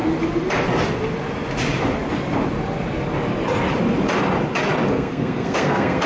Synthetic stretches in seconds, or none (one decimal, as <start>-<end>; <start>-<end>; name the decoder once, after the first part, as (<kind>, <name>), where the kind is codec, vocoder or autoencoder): 4.9-6.1 (codec, SNAC)

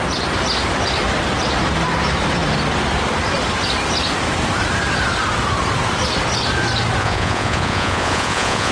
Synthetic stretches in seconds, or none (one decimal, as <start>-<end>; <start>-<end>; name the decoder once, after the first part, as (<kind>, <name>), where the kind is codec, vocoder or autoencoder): 7.0-8.7 (vocoder, Vocos)